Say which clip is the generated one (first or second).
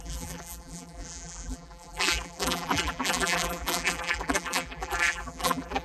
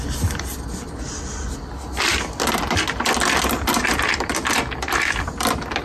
first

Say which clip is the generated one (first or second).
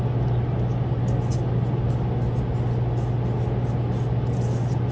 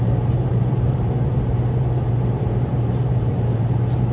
second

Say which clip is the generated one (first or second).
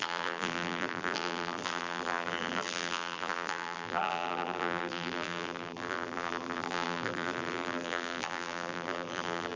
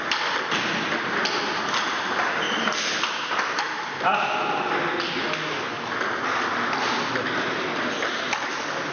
first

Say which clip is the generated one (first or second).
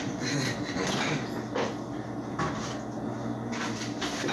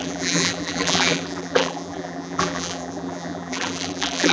second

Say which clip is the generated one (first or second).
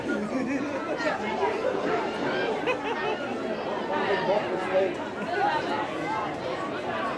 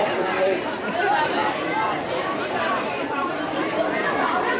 second